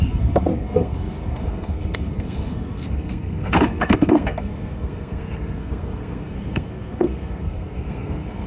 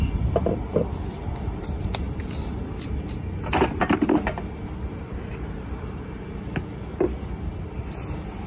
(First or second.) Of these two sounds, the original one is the second